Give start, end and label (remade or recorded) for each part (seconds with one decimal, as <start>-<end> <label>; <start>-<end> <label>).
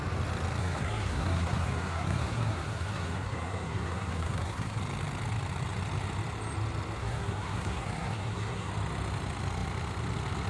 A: 0.0-0.6 recorded; 0.6-4.8 remade; 4.8-7.0 recorded; 7.0-8.7 remade; 8.7-10.5 recorded